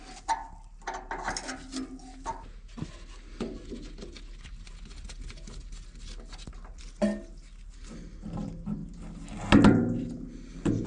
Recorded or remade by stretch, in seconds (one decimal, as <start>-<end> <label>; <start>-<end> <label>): 0.0-10.9 recorded